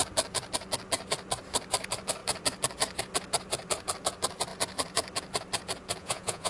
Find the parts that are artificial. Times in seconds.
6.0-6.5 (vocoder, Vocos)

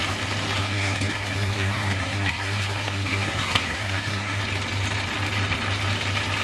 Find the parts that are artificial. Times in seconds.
0.6-4.4 (codec, SNAC)

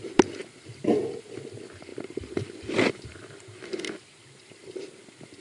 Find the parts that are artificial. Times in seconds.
1.9-5.4 (vocoder, BigVGAN v2)

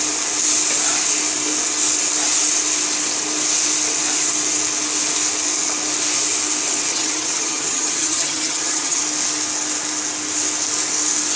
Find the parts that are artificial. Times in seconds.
6.9-9.0 (vocoder, HiFi-GAN)

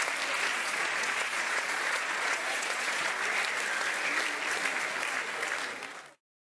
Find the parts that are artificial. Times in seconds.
0.5-3.1 (vocoder, Vocos)